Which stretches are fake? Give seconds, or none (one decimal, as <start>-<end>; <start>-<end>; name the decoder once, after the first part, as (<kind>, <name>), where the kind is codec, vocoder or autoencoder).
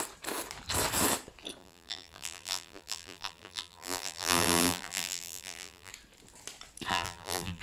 1.6-5.9 (vocoder, BigVGAN v2); 6.9-7.6